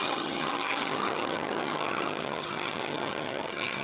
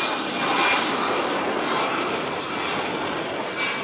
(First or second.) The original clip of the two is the second